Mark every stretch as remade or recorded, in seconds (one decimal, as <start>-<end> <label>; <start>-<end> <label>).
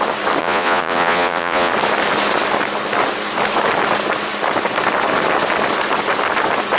0.0-0.4 recorded; 0.4-1.7 remade; 1.7-6.8 recorded